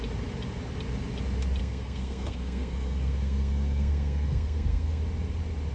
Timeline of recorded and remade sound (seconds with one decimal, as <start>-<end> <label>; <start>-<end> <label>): 0.0-1.6 recorded; 1.6-5.0 remade; 5.0-5.7 recorded